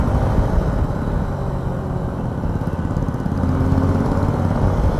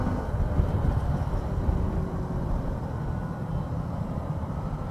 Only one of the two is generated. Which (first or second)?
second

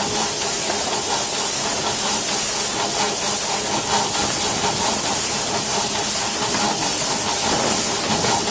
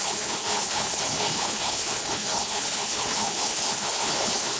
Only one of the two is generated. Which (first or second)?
second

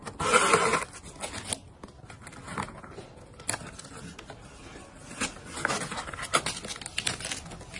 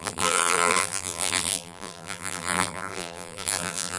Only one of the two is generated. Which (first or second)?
second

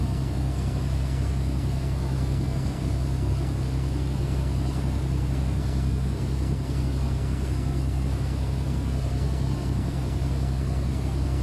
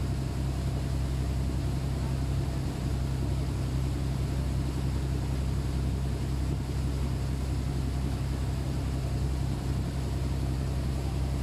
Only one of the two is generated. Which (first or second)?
first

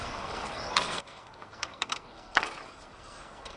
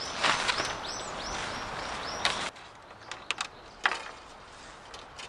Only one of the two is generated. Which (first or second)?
first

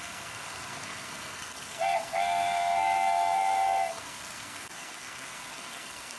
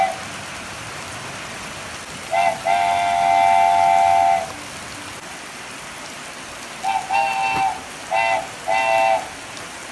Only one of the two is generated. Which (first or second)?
first